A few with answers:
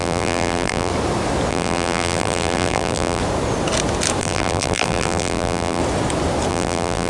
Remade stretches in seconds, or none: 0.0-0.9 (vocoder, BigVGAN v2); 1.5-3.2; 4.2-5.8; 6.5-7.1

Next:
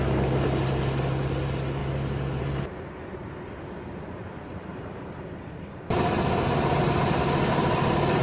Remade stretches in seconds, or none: 0.0-1.8 (vocoder, BigVGAN v2); 2.4-4.7; 6.8-8.2

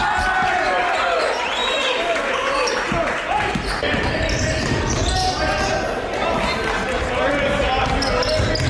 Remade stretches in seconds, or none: 1.6-2.7 (vocoder, BigVGAN v2)

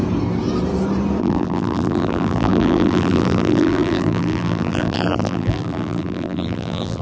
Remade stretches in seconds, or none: 1.2-7.0 (vocoder, BigVGAN v2)

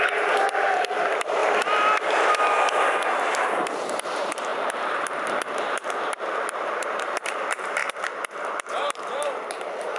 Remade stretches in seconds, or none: 0.0-1.4 (vocoder, BigVGAN v2); 3.4-7.8; 8.7-10.0